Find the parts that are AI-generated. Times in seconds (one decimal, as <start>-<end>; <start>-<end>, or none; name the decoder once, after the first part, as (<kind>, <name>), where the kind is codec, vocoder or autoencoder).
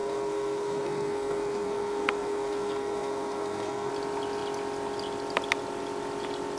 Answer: 0.0-3.9 (codec, SNAC)